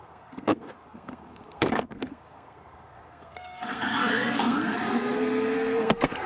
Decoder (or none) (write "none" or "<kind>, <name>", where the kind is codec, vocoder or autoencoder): codec, SNAC